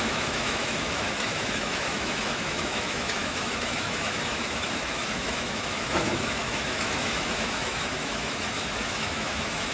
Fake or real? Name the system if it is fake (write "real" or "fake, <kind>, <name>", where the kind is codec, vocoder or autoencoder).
fake, autoencoder, DAC-VAE